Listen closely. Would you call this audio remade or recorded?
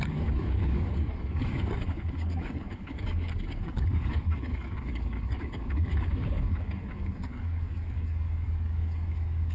remade